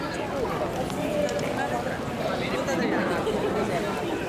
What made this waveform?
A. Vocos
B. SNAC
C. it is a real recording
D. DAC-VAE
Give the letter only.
C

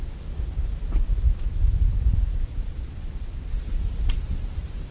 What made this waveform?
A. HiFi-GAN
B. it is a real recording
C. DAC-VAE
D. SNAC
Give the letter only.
B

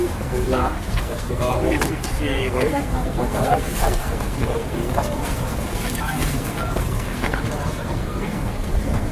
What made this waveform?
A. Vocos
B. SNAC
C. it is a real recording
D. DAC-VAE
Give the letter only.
B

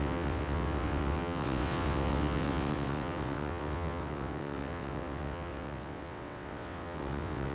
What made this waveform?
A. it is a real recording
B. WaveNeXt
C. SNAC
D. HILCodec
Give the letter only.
B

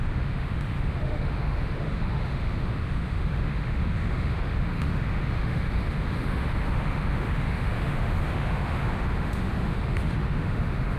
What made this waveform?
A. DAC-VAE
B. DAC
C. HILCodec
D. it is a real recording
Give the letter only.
A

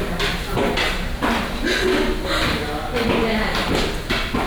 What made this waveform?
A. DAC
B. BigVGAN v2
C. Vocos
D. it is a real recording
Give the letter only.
D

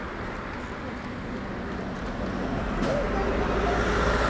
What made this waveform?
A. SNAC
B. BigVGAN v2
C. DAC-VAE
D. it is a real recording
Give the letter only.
D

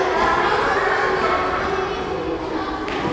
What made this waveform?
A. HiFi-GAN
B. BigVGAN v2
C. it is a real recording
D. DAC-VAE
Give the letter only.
C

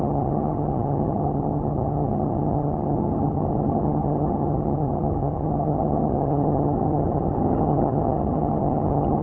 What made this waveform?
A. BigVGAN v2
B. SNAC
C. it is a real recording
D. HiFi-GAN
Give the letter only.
D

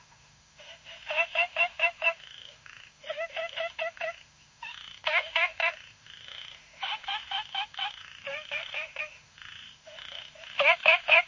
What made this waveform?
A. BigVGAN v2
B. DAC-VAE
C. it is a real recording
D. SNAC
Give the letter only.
B